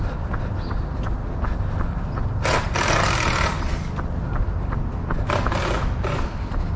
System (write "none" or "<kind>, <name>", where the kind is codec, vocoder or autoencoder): none